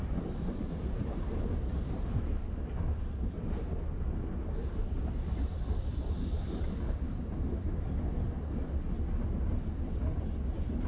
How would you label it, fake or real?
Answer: real